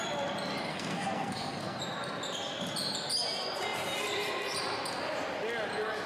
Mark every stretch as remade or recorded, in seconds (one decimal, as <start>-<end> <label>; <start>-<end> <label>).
0.0-0.7 recorded; 0.7-1.8 remade; 1.8-6.1 recorded